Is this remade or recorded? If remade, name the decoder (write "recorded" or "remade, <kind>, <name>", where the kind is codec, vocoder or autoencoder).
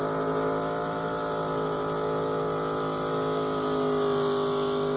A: recorded